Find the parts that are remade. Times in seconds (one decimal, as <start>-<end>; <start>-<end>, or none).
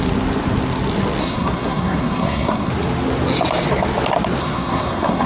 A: 1.2-2.7; 4.4-5.3